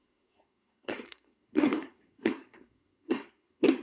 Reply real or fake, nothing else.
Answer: fake